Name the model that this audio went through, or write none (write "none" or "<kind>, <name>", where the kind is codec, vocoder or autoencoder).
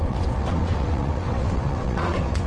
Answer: vocoder, WaveNeXt